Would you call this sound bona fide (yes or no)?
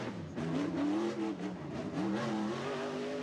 no